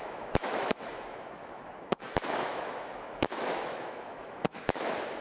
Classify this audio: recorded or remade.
remade